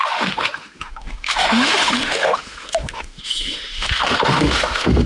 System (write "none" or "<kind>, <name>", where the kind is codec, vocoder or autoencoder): autoencoder, DAC-VAE